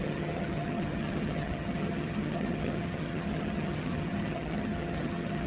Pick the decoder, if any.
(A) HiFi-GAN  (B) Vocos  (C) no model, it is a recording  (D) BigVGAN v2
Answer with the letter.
A